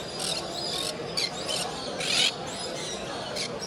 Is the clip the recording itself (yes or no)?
yes